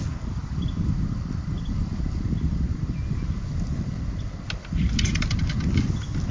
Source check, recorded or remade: recorded